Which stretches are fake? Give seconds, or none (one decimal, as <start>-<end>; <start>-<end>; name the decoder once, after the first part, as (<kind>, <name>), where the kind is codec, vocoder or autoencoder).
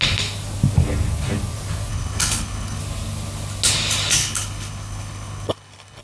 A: 1.9-2.8 (codec, HILCodec); 4.2-6.0